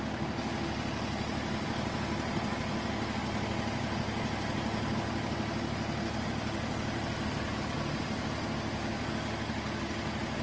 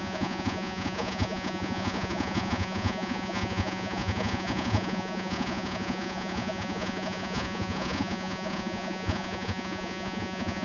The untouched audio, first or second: first